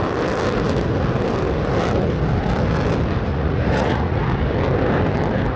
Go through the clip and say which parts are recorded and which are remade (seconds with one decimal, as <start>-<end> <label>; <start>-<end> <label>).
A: 0.0-3.3 recorded; 3.3-4.2 remade; 4.2-5.6 recorded